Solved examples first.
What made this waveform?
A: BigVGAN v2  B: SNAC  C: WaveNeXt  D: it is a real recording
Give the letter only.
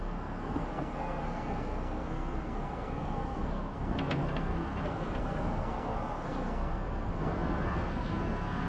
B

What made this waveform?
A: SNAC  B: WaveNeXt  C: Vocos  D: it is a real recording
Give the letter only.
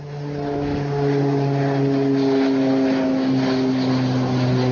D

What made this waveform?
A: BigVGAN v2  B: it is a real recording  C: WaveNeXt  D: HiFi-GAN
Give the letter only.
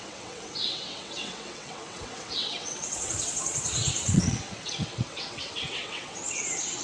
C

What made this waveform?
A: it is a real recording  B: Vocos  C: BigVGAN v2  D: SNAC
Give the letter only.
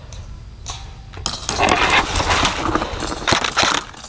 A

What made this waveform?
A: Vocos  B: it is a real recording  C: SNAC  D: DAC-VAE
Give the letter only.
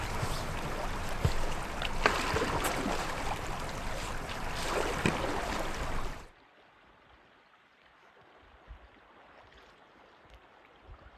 B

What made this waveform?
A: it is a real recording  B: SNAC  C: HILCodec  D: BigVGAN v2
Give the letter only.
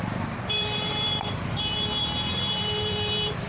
D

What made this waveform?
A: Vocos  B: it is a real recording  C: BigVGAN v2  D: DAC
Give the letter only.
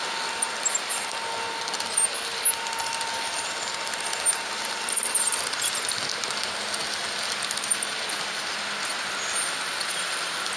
B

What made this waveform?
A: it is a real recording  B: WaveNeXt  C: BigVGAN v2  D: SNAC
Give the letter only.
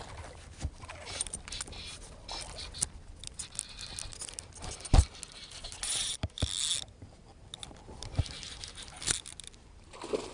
A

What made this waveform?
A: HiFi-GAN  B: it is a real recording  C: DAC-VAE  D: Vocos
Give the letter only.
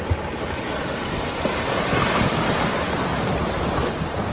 B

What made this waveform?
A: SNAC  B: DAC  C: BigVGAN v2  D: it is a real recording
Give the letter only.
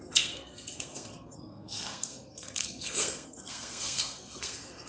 A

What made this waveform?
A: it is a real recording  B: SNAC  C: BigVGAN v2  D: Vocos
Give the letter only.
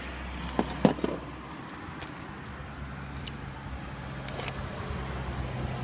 A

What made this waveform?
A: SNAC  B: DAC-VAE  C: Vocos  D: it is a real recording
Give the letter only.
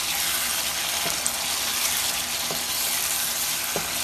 D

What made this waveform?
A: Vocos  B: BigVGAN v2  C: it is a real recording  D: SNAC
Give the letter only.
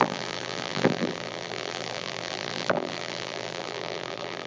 B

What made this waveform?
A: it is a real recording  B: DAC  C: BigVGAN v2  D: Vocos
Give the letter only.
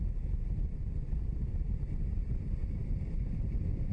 A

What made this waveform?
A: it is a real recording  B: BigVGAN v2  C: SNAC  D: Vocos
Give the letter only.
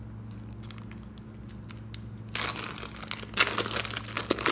A